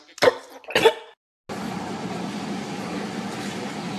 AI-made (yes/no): no